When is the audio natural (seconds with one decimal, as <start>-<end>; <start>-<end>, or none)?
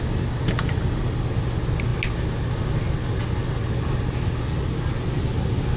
0.0-5.8